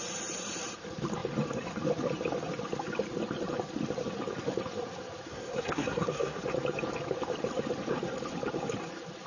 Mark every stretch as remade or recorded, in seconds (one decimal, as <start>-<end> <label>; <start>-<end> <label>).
0.0-5.3 recorded; 5.3-6.4 remade; 6.4-9.3 recorded